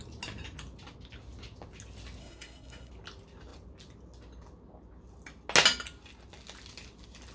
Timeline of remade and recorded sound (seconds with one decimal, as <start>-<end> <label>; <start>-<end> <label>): 0.0-2.2 recorded; 2.2-2.9 remade; 2.9-7.3 recorded